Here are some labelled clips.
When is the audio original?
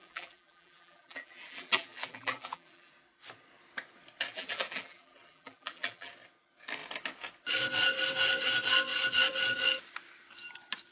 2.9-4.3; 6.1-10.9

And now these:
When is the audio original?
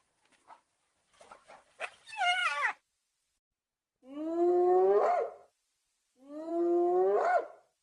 0.0-7.8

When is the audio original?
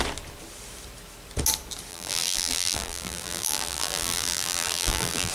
0.0-1.9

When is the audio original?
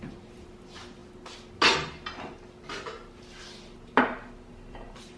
1.0-3.4